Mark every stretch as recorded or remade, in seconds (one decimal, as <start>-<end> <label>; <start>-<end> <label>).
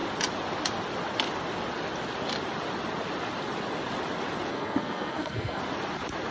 0.0-4.5 recorded; 4.5-5.6 remade; 5.6-6.3 recorded